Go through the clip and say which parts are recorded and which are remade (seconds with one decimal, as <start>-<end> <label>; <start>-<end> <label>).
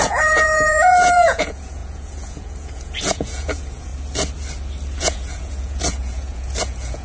0.0-3.9 remade; 3.9-5.0 recorded; 5.0-7.0 remade